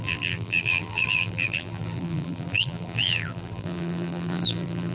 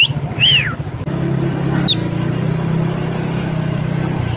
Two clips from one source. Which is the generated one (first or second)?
first